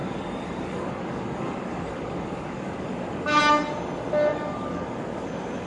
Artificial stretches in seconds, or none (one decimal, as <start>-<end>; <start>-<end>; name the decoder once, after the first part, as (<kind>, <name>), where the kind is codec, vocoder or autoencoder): 0.0-3.4 (codec, DAC); 4.3-5.3